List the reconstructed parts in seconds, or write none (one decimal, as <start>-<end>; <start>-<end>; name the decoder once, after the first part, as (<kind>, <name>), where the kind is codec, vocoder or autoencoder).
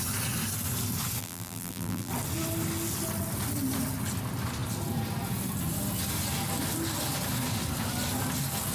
1.2-2.1 (vocoder, BigVGAN v2)